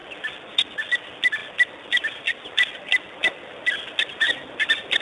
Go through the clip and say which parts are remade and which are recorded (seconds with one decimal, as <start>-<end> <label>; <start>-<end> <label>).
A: 0.0-5.0 recorded